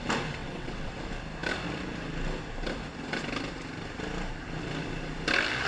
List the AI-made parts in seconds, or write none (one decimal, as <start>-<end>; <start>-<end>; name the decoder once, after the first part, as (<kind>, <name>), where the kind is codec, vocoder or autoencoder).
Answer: 0.4-0.9 (vocoder, WaveNeXt)